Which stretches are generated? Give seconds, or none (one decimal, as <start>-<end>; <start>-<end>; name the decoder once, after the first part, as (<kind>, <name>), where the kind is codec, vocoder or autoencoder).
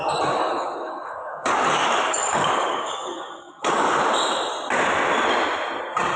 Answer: 0.4-3.9 (codec, DAC)